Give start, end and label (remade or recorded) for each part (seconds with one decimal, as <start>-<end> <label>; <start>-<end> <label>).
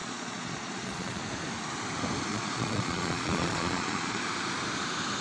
0.0-1.2 remade; 1.2-2.3 recorded; 2.3-4.2 remade; 4.2-5.2 recorded